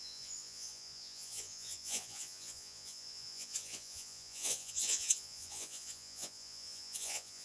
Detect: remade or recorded remade